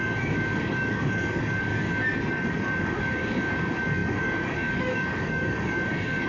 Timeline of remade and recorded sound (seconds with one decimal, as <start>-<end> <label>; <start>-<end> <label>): 0.0-1.7 remade; 1.7-2.3 recorded; 2.3-6.3 remade